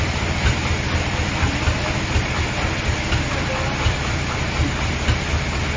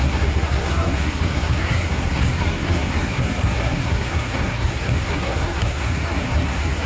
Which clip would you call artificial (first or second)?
second